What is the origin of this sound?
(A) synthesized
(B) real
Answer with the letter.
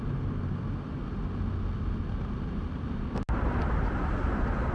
B